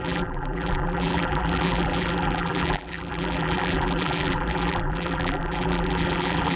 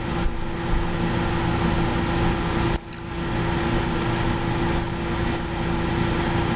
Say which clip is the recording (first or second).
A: second